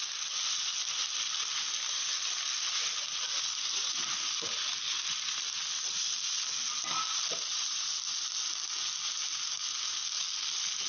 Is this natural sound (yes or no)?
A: yes